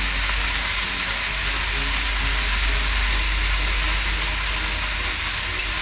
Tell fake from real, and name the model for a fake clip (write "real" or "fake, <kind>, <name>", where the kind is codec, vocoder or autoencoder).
real